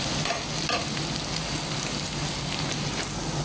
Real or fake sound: real